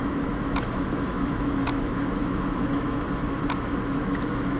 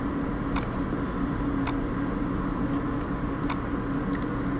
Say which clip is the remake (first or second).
first